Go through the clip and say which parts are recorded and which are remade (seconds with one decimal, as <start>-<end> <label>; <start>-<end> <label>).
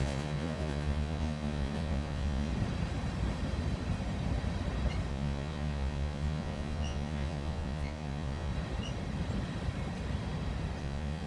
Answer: 0.0-2.5 remade; 2.5-5.1 recorded; 5.1-8.5 remade; 8.5-10.8 recorded; 10.8-11.3 remade